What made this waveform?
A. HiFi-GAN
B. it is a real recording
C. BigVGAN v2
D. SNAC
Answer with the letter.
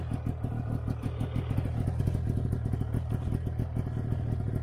B